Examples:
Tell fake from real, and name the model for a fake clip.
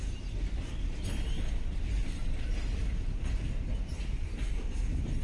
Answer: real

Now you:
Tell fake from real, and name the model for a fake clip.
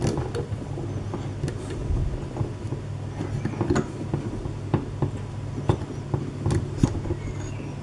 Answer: real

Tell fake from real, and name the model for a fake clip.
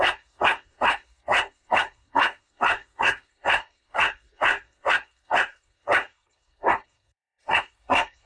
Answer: fake, codec, SNAC